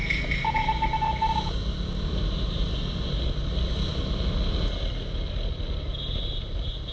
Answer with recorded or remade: recorded